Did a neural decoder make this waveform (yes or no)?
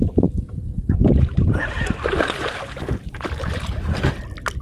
no